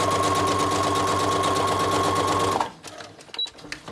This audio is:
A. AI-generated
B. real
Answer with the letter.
B